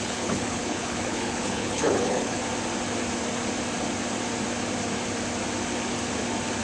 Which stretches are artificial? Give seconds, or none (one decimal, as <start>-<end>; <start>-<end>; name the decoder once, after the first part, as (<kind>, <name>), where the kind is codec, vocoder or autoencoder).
0.0-2.4 (codec, HILCodec)